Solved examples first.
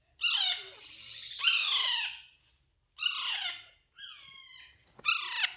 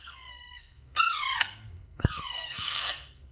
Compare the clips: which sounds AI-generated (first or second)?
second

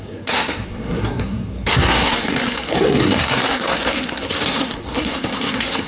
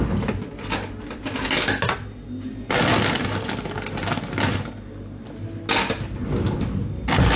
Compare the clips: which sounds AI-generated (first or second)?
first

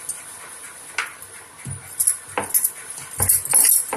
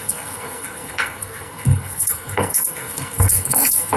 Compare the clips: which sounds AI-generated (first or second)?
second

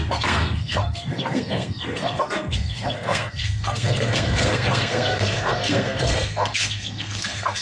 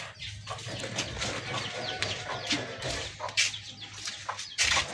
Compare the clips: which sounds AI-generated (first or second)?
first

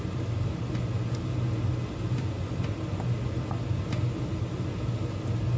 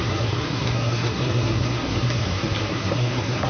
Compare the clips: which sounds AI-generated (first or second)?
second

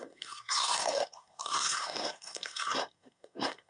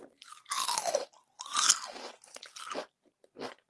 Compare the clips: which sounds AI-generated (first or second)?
first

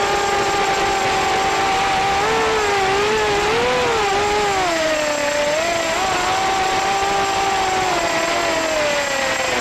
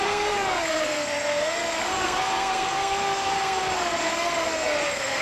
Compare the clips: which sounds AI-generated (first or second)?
second